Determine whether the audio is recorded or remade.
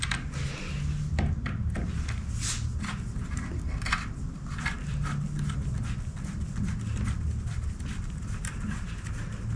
recorded